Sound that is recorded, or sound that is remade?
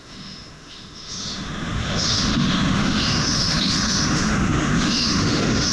remade